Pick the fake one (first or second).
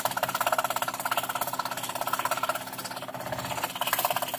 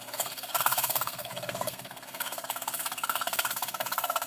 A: second